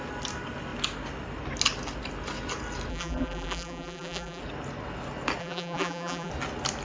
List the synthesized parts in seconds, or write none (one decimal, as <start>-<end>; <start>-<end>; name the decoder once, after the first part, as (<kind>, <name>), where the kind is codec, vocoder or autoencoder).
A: 2.9-4.4 (vocoder, BigVGAN v2); 5.4-6.3